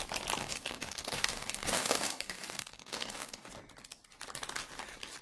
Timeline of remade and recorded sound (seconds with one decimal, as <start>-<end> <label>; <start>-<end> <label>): 0.0-0.4 recorded; 0.4-3.5 remade; 3.5-5.2 recorded